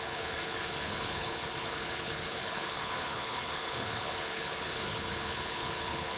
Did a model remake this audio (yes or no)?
yes